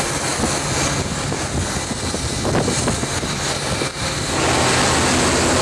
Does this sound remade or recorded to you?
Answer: recorded